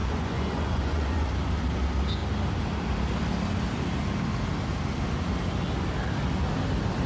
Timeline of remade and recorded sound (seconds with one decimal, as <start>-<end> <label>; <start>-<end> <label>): 0.0-1.3 remade; 1.3-7.1 recorded